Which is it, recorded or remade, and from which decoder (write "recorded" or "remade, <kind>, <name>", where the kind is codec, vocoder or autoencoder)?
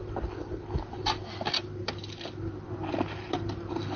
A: recorded